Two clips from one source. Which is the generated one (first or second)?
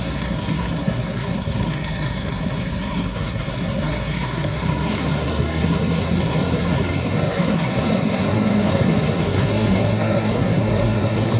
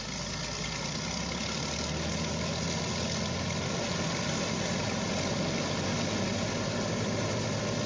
first